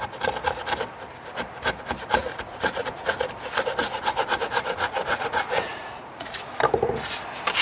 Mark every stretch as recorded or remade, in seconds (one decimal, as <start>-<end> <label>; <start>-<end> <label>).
0.0-2.2 recorded; 2.2-3.3 remade; 3.3-3.8 recorded; 3.8-6.5 remade; 6.5-7.6 recorded